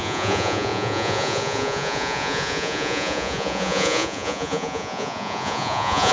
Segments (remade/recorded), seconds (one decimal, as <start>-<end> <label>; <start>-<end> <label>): 0.0-6.1 remade